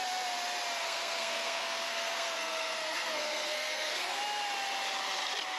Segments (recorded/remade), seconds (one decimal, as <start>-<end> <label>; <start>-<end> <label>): 0.0-0.8 recorded; 0.8-4.2 remade; 4.2-5.6 recorded